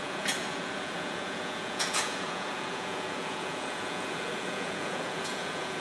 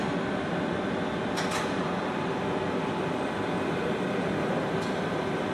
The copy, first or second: first